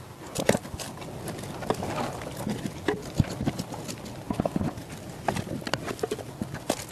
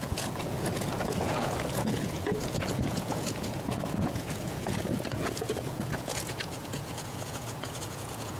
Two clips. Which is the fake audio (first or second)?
second